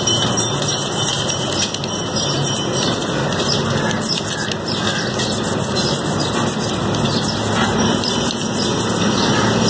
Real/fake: real